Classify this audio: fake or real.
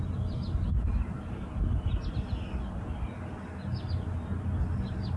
real